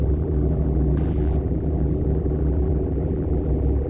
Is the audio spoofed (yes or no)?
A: yes